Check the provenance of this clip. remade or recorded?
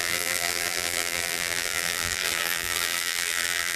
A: remade